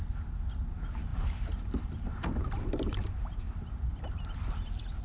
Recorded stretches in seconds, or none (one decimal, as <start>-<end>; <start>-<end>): 0.0-1.1; 3.5-5.0